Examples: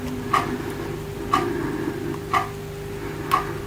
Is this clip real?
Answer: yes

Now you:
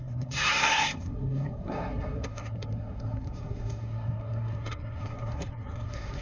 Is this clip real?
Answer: no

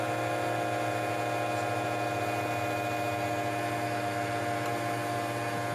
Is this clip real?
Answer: yes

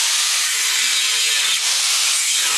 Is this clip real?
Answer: yes